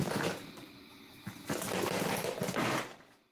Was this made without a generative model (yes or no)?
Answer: yes